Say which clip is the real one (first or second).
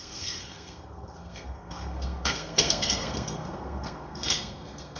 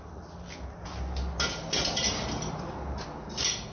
second